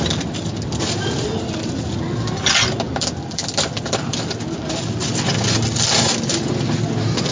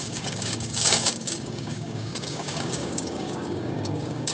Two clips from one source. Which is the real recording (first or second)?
first